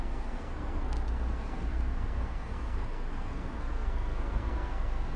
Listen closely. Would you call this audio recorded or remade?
remade